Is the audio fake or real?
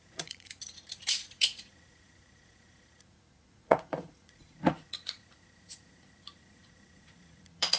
fake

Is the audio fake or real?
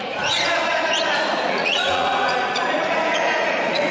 fake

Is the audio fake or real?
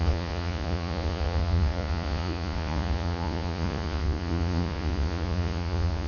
fake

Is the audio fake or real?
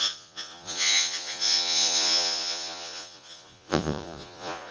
fake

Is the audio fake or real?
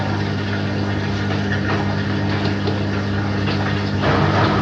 real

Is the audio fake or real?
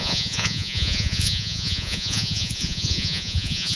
fake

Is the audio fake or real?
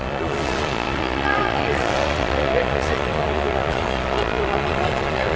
fake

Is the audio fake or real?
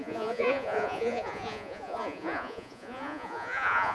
fake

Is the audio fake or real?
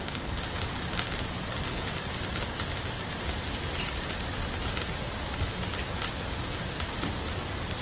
real